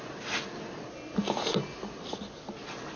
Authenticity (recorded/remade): recorded